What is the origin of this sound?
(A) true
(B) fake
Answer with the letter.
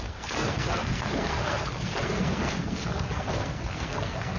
B